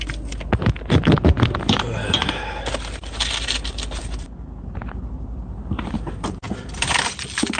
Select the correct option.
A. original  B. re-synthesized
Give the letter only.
A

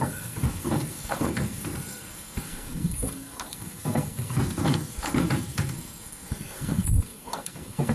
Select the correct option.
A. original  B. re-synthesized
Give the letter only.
B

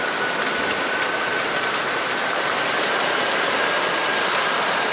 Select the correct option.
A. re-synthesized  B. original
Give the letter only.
B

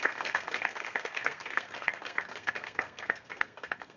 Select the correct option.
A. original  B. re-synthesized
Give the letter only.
B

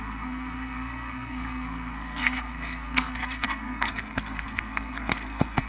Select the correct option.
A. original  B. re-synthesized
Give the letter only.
B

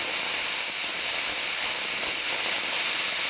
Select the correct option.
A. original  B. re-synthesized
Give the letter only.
A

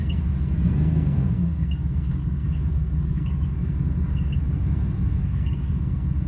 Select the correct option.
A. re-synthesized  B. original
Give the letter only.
A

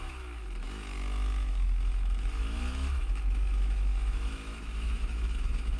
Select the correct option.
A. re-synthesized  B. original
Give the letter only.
A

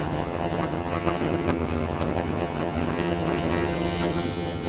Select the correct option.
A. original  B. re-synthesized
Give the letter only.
B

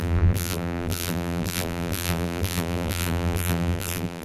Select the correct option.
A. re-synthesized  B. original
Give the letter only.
A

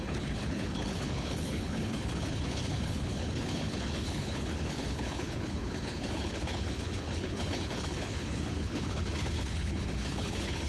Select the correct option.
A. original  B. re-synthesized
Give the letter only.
B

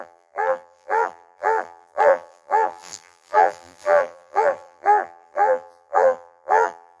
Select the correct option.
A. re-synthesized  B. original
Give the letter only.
A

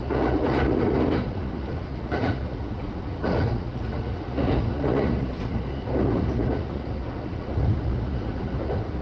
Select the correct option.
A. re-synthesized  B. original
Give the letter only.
A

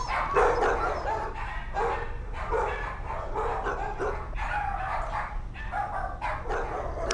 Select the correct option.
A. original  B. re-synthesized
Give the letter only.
A